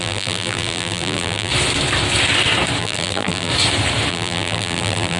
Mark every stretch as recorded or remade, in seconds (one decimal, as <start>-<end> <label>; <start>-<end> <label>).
0.0-1.5 remade; 1.5-2.8 recorded; 2.8-3.5 remade; 3.5-4.1 recorded; 4.1-5.2 remade

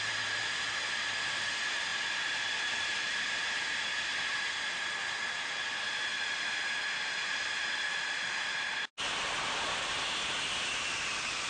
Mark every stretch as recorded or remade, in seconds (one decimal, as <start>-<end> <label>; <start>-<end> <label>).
0.0-11.5 recorded

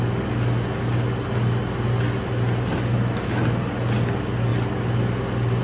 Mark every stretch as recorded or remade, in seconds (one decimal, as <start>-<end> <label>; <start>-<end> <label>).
0.0-5.6 recorded

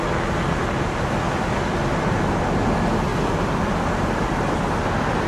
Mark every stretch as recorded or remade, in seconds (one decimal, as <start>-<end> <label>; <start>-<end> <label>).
0.0-5.3 recorded

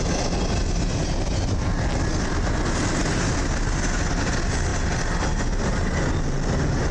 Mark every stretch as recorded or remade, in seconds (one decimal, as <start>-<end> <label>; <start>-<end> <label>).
0.0-6.9 recorded

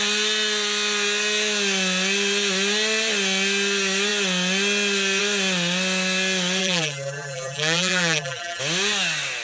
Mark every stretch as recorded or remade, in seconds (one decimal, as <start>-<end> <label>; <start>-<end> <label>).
0.0-6.6 recorded; 6.6-8.6 remade; 8.6-9.4 recorded